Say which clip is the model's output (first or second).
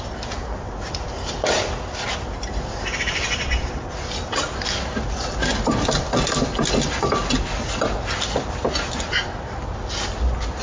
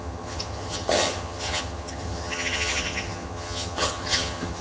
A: second